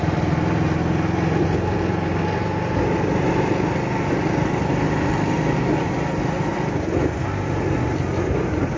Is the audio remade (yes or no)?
no